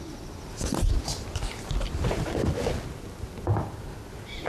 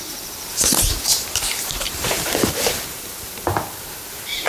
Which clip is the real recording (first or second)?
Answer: first